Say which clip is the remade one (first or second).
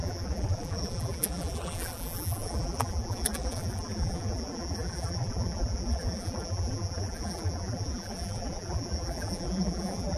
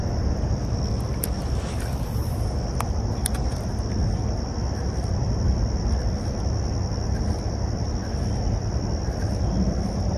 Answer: first